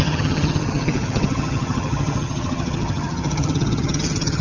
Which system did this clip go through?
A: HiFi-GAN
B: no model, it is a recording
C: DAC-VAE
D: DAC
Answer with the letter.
A